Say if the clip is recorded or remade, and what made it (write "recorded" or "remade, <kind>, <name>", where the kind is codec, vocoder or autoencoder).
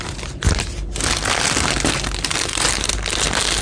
recorded